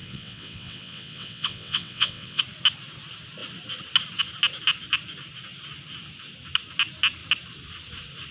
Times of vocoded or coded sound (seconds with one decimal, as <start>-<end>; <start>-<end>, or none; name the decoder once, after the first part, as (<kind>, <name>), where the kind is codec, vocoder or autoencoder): 0.0-2.4 (vocoder, WaveNeXt)